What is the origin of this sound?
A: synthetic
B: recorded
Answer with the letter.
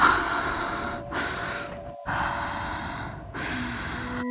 B